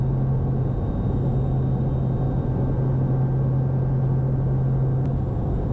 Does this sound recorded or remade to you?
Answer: recorded